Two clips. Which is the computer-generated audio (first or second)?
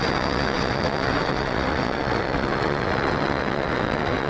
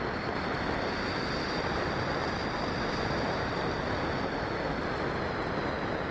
first